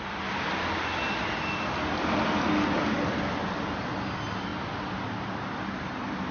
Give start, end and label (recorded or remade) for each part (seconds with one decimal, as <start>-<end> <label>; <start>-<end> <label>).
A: 0.0-6.3 recorded